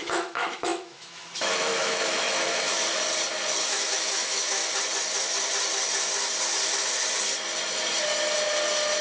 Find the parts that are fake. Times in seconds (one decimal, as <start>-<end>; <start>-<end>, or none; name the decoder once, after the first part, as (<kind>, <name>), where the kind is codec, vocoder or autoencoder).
0.0-2.7 (autoencoder, DAC-VAE); 3.6-4.6